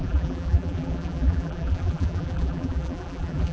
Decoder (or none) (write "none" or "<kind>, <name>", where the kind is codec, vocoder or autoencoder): vocoder, BigVGAN v2